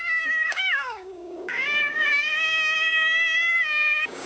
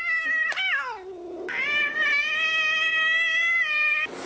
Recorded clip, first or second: second